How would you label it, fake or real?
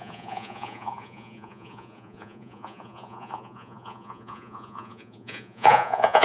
fake